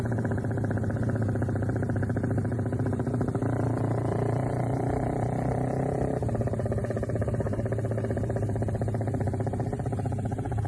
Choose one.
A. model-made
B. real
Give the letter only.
A